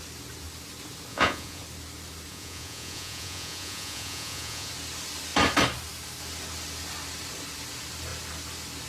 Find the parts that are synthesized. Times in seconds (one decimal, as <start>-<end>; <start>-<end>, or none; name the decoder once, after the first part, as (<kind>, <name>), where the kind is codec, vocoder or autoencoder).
1.1-1.6 (vocoder, Vocos); 2.3-4.7